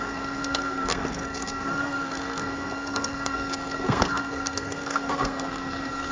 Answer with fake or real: fake